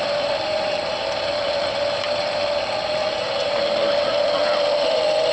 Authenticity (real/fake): fake